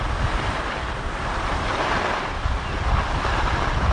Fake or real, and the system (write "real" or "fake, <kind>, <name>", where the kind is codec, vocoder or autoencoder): real